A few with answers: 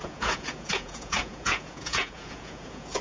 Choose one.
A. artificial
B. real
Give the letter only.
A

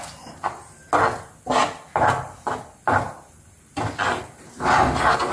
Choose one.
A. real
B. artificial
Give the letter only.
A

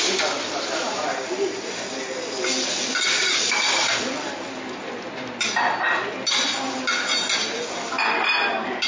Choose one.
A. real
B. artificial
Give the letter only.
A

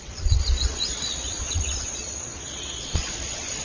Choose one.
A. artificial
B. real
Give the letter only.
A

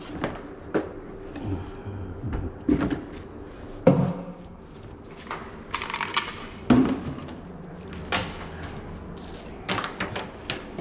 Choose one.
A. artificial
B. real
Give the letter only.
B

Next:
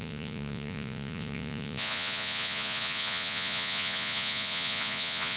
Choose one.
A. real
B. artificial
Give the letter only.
B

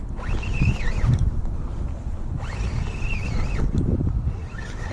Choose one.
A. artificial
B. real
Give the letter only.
B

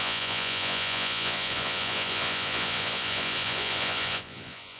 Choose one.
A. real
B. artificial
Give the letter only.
B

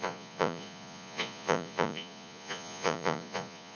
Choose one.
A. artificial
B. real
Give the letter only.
A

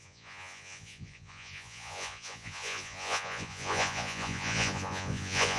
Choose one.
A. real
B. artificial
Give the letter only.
B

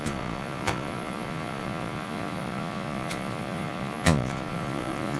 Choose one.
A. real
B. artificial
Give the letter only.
B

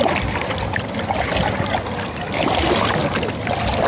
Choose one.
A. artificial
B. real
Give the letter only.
B